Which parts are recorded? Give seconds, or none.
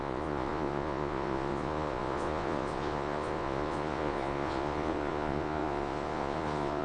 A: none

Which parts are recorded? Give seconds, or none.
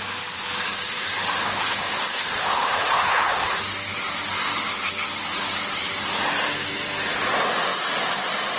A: 0.0-1.4; 3.6-8.6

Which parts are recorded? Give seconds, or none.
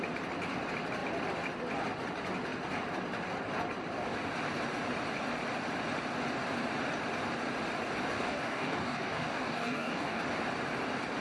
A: 0.0-8.1; 10.2-11.2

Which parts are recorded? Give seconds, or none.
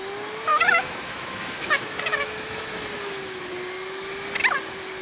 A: 0.0-0.5; 3.4-5.0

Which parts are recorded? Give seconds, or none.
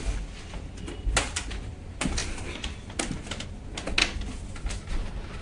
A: 0.0-5.4